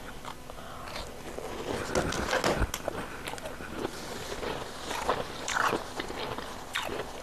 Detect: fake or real real